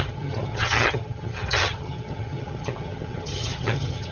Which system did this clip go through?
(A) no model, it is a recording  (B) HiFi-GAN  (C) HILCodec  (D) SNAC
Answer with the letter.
B